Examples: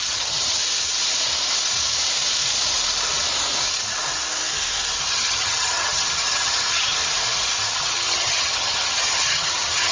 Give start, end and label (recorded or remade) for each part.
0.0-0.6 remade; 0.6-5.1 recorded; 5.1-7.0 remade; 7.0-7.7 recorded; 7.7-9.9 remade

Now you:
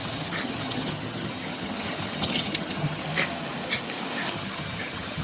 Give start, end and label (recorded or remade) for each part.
0.0-3.1 remade; 3.1-4.3 recorded; 4.3-5.2 remade

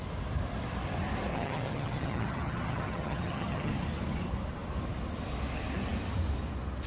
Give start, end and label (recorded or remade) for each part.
0.0-1.3 recorded; 1.3-3.7 remade; 3.7-6.9 recorded

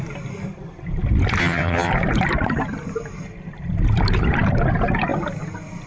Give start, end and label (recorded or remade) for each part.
0.0-1.4 recorded; 1.4-1.9 remade; 1.9-5.9 recorded